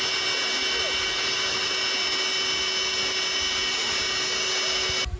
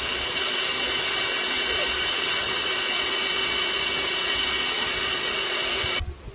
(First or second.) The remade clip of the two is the second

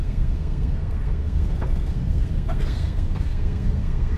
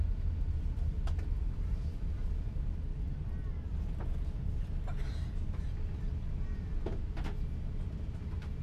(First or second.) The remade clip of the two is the first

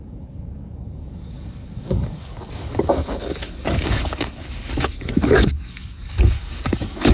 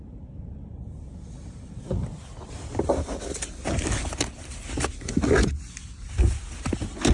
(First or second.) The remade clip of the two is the first